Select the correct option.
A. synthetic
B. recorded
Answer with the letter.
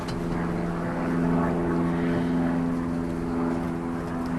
B